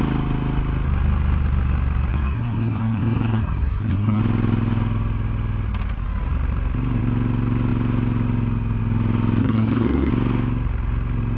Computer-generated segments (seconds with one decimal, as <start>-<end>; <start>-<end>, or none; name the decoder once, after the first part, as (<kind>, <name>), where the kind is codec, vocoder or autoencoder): 2.1-4.2 (codec, SNAC); 9.4-10.1